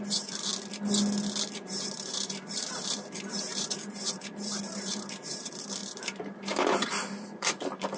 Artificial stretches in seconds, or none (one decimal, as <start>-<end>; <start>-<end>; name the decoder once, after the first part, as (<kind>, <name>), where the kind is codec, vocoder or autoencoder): 0.0-0.5 (vocoder, BigVGAN v2); 1.4-8.0